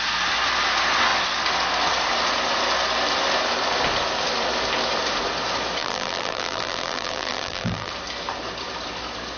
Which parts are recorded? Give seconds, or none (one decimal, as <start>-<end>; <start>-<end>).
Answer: 0.0-5.8; 7.9-9.4